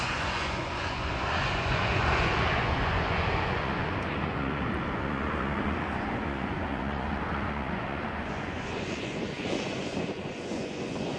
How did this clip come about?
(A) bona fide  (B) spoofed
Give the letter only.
B